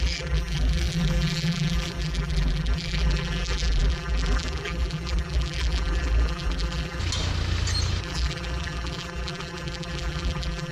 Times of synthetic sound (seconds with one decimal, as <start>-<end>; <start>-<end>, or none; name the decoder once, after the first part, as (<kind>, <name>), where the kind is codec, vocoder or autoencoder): 0.0-7.0 (vocoder, BigVGAN v2); 8.0-10.7